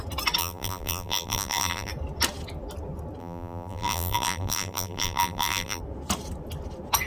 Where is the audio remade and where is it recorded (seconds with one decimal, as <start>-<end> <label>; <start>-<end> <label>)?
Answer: 0.0-0.4 recorded; 0.4-1.9 remade; 1.9-3.2 recorded; 3.2-5.8 remade; 5.8-7.1 recorded